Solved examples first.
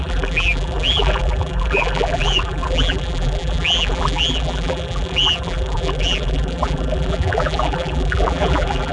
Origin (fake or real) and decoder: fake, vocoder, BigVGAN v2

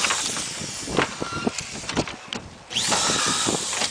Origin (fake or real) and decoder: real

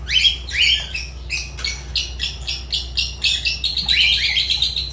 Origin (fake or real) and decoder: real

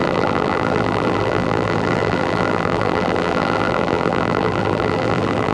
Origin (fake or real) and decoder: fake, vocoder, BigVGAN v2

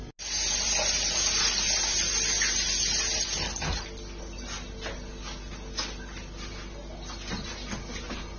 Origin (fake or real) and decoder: real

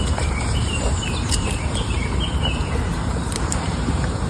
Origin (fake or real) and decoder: fake, vocoder, BigVGAN v2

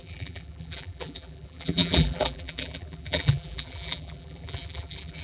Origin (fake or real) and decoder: fake, vocoder, BigVGAN v2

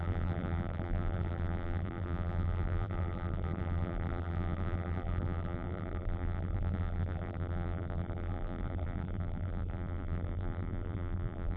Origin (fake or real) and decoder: fake, vocoder, BigVGAN v2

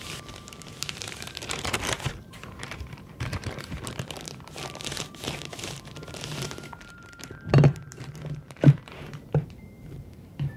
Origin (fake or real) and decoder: fake, vocoder, BigVGAN v2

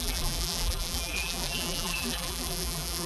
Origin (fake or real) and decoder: fake, vocoder, BigVGAN v2